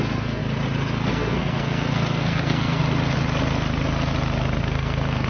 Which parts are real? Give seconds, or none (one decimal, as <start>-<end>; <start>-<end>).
0.4-1.1; 2.8-4.6